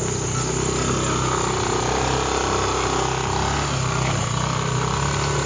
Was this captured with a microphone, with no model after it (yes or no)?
yes